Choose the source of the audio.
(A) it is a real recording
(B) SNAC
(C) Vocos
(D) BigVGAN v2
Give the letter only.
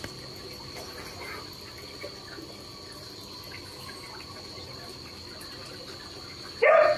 A